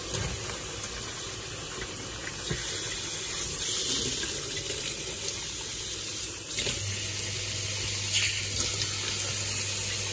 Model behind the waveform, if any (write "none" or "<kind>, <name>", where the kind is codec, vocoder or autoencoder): none